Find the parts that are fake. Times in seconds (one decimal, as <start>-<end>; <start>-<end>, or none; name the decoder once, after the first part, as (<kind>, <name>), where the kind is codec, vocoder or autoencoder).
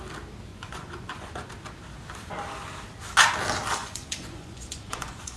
0.5-1.5 (vocoder, Vocos); 3.8-5.4